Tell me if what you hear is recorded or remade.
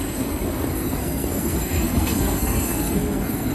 remade